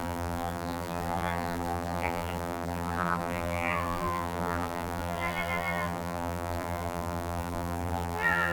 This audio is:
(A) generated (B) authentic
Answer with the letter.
A